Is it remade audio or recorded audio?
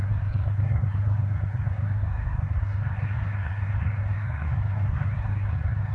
remade